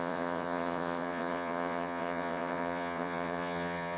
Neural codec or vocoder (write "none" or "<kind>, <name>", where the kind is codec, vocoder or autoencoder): vocoder, Vocos